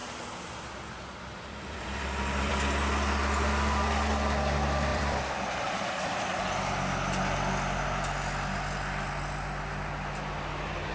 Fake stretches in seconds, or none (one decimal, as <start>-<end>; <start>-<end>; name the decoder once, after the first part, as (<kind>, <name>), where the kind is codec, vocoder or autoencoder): 0.0-2.5 (vocoder, BigVGAN v2); 4.9-6.4